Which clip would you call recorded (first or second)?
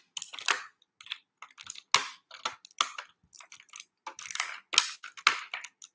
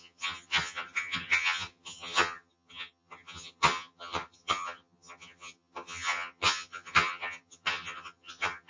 first